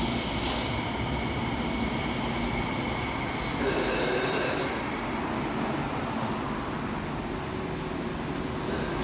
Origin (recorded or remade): recorded